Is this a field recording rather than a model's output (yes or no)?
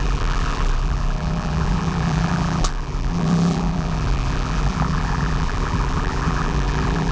no